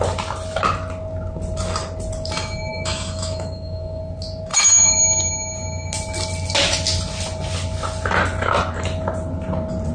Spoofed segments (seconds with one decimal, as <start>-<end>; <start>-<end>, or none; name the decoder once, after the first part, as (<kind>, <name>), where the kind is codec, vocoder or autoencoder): 2.7-4.0 (autoencoder, DAC-VAE); 4.5-5.0